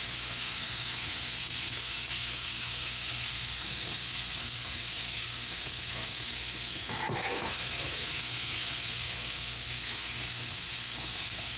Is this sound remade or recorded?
remade